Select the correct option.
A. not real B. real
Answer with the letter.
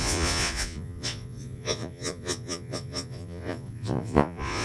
A